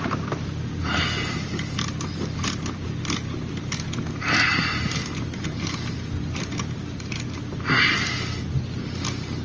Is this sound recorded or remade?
recorded